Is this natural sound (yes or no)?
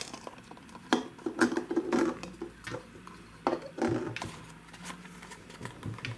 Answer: yes